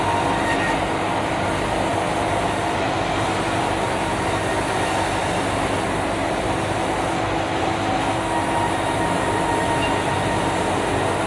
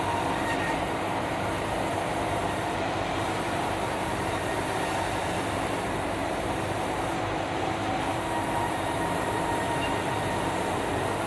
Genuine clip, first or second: first